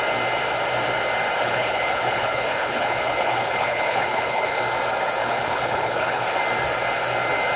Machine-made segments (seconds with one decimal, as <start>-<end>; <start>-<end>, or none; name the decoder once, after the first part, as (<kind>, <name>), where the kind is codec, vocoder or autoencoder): 1.4-4.6 (codec, HILCodec); 5.2-6.4